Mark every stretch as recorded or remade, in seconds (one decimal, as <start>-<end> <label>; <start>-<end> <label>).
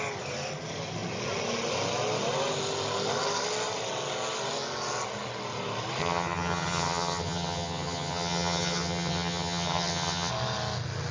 0.0-6.0 recorded; 6.0-10.3 remade; 10.3-11.1 recorded